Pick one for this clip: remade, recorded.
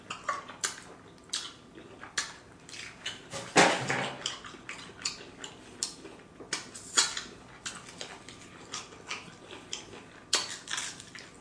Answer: recorded